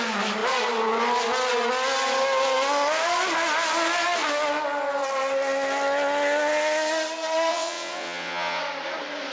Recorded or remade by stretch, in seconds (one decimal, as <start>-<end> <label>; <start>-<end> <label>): 0.0-7.5 recorded; 7.5-8.6 remade; 8.6-9.3 recorded

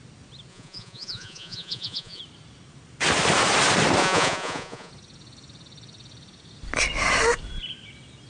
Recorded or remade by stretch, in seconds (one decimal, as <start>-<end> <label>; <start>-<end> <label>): 0.0-0.5 recorded; 0.5-2.2 remade; 2.2-4.0 recorded; 4.0-4.9 remade; 4.9-8.3 recorded

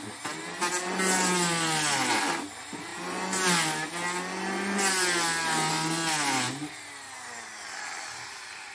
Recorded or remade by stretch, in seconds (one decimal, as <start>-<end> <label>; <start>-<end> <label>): 0.0-8.7 recorded